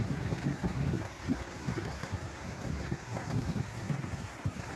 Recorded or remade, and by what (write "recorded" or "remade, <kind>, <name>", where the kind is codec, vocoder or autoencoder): remade, codec, SNAC